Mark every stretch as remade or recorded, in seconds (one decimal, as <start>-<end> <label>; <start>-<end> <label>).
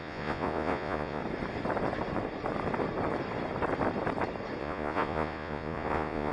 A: 0.0-1.2 remade; 1.2-4.6 recorded; 4.6-6.3 remade